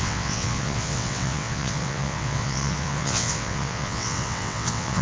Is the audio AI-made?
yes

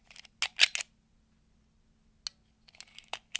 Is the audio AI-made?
no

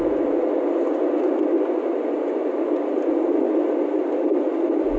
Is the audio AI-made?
no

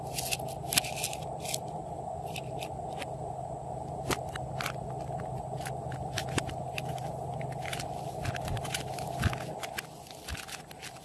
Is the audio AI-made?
no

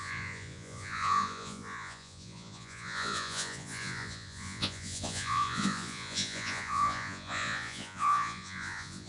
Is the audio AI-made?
yes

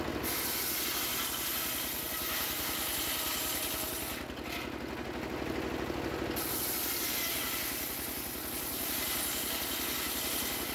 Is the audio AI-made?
no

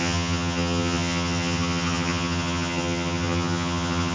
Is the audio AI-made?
yes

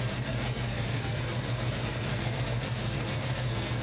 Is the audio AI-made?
yes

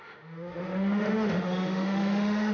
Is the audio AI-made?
yes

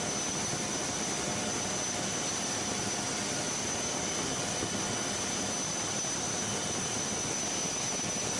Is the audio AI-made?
no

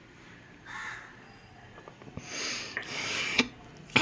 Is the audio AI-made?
no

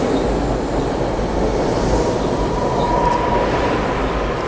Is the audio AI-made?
no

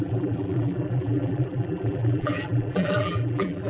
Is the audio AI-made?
yes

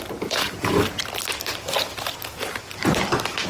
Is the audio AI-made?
no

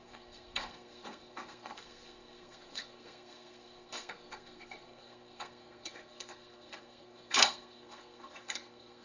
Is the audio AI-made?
yes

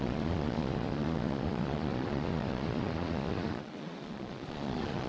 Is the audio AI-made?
yes